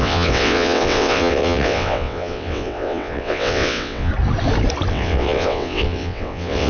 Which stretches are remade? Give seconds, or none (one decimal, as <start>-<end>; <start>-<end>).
0.0-4.1; 4.9-6.7